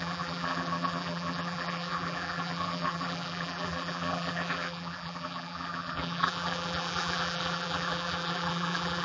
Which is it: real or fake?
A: fake